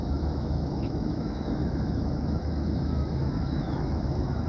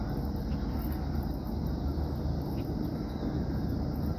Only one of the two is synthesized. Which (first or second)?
first